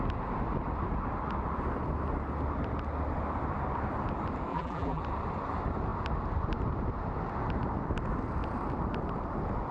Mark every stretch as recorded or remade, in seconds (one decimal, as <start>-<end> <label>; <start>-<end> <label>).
0.0-4.5 recorded; 4.5-5.0 remade; 5.0-9.7 recorded